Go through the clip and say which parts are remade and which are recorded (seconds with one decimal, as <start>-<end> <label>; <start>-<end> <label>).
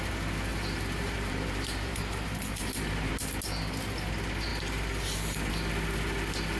0.0-0.5 recorded; 0.5-3.1 remade; 3.1-6.6 recorded